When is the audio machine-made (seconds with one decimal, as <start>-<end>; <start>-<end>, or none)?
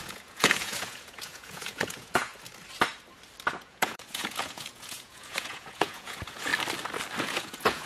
0.0-2.3; 3.5-6.5; 7.2-7.9